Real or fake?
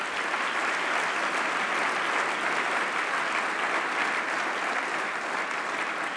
real